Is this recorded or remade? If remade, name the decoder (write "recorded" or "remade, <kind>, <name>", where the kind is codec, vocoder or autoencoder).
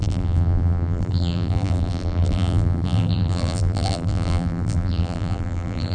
remade, vocoder, BigVGAN v2